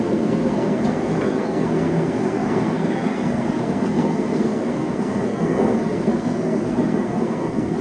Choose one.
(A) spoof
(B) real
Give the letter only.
A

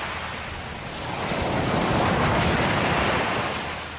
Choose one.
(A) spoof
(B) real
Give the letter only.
B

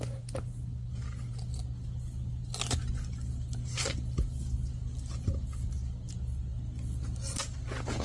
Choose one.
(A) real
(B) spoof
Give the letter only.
A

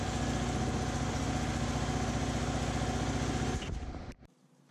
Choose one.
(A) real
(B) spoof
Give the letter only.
A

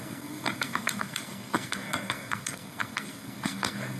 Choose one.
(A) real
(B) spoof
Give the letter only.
B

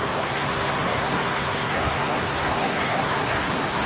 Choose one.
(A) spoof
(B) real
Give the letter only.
A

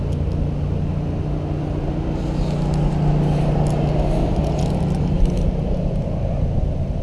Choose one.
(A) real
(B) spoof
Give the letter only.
A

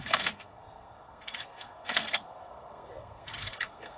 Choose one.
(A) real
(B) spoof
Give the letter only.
B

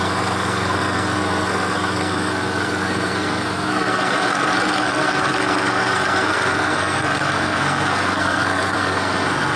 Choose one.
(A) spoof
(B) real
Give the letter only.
A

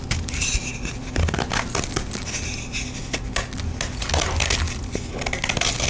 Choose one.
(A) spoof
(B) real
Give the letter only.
B